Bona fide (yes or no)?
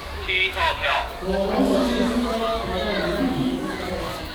no